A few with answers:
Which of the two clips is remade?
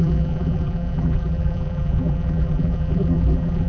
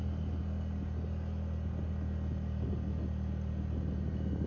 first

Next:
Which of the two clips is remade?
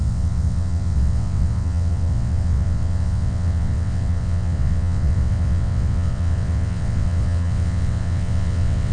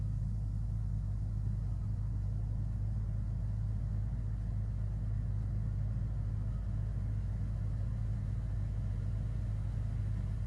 first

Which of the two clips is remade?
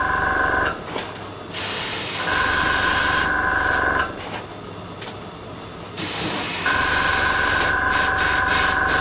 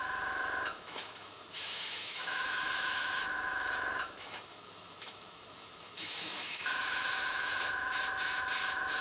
second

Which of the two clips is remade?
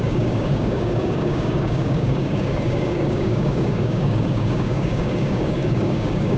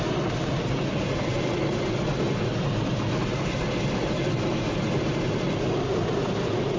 first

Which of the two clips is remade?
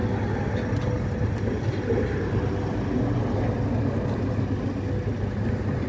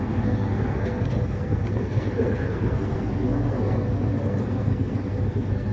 second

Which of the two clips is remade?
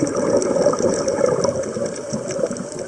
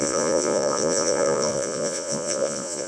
second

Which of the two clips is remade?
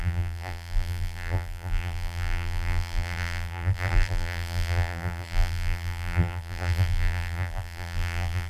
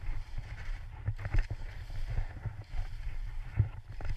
first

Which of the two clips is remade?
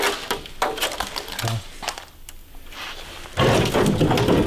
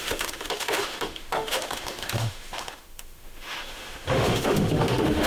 second